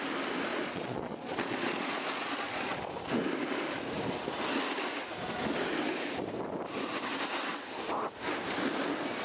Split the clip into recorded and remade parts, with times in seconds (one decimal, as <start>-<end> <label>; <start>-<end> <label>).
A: 0.0-0.5 recorded; 0.5-2.8 remade; 2.8-9.2 recorded